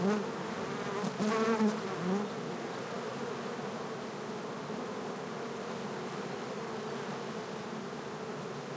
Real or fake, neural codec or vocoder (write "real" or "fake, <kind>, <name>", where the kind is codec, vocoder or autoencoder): real